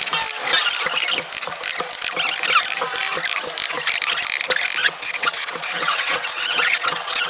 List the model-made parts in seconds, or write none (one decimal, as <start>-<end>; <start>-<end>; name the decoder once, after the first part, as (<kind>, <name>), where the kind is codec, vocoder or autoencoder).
4.8-7.3 (vocoder, WaveNeXt)